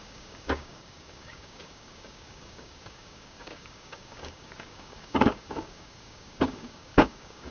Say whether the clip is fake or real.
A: fake